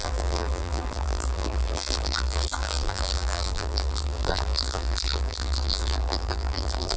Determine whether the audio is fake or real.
fake